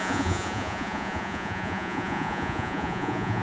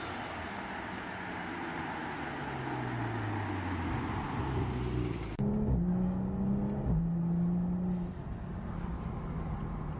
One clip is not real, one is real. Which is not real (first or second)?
first